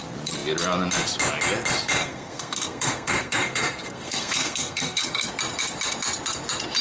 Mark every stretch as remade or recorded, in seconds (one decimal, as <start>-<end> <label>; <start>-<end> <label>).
0.0-2.0 recorded; 2.0-5.3 remade; 5.3-6.8 recorded